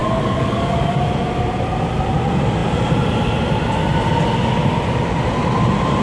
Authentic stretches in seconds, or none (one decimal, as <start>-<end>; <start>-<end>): 1.0-6.0